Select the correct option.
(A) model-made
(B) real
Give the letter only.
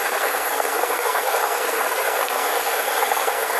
A